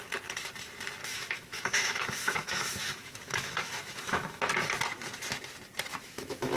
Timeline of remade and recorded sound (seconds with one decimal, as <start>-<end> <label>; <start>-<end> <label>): 0.0-1.0 recorded; 1.0-4.4 remade; 4.4-5.9 recorded; 5.9-6.6 remade